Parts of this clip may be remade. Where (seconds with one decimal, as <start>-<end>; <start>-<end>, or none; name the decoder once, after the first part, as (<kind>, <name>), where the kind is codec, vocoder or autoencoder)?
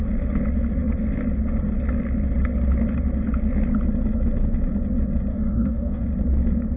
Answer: 5.3-6.0 (codec, DAC)